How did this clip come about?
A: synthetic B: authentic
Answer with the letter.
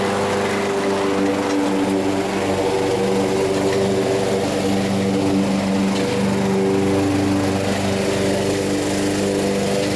B